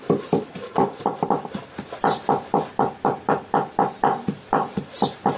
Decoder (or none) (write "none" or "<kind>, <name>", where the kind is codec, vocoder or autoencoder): vocoder, BigVGAN v2